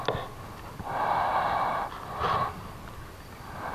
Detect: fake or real real